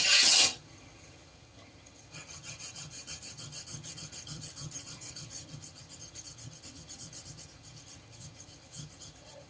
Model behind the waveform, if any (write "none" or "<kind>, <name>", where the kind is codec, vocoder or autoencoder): vocoder, HiFi-GAN